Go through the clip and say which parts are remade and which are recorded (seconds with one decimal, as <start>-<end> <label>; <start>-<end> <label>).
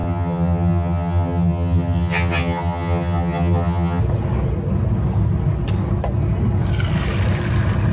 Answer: 0.0-4.0 remade; 4.0-7.9 recorded